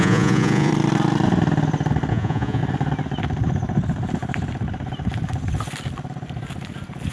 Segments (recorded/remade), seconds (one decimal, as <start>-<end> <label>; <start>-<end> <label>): 0.0-0.7 remade; 0.7-2.1 recorded; 2.1-2.6 remade; 2.6-7.1 recorded